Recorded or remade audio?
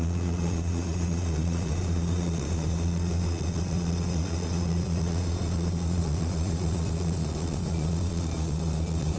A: remade